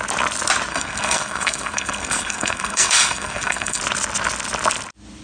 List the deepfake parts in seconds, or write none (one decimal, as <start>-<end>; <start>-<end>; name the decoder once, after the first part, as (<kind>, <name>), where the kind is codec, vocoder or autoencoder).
0.7-3.8 (codec, SNAC)